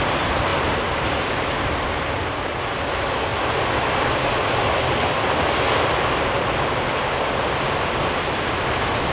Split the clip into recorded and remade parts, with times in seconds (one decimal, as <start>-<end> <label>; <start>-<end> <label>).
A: 0.0-9.1 recorded